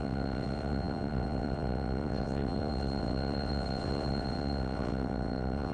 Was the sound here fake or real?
fake